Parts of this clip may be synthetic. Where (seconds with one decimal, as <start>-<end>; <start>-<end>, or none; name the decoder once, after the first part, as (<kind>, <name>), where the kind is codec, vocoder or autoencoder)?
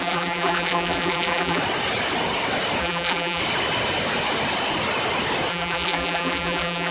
0.0-1.6 (vocoder, BigVGAN v2); 2.8-3.4; 5.5-6.9